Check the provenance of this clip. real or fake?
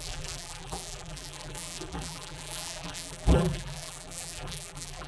fake